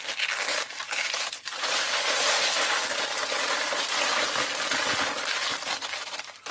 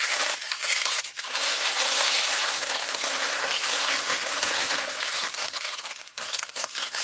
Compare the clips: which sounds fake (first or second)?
second